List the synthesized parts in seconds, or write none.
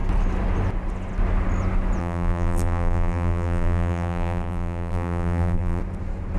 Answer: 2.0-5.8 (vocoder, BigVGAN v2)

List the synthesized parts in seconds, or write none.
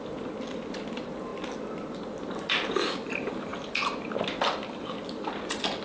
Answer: none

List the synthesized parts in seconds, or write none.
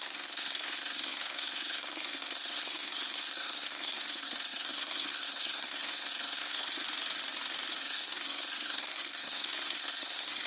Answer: 0.0-6.8 (codec, SNAC); 7.8-10.5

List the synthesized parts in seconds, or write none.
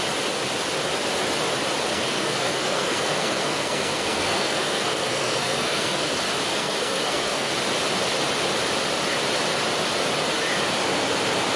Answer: 1.9-6.1 (codec, SNAC); 6.5-7.5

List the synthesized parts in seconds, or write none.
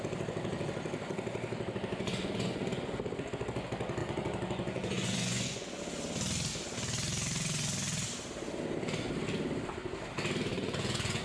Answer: 1.9-2.9 (vocoder, Vocos); 4.0-5.8; 10.5-11.2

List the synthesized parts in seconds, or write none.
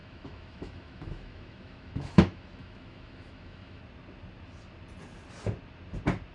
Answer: 0.0-3.8 (autoencoder, DAC-VAE)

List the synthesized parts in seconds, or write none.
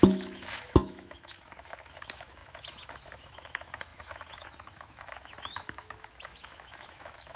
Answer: 0.0-7.4 (autoencoder, DAC-VAE)